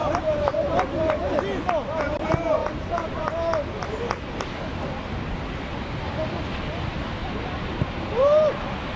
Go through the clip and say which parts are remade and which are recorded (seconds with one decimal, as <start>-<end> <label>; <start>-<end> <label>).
0.0-1.3 remade; 1.3-2.6 recorded; 2.6-3.3 remade; 3.3-7.2 recorded; 7.2-8.6 remade; 8.6-9.0 recorded